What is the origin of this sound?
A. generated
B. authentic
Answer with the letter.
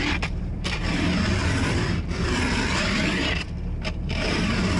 A